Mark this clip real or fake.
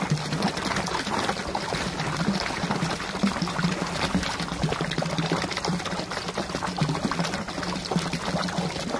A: real